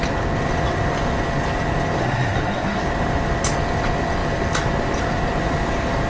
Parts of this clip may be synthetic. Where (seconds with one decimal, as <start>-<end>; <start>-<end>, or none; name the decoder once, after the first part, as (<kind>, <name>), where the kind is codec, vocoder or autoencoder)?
2.0-2.8 (codec, SNAC)